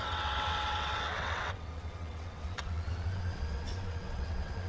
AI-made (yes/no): yes